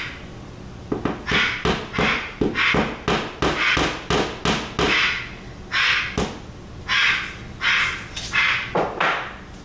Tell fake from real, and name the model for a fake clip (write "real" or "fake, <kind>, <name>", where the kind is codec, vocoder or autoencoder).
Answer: real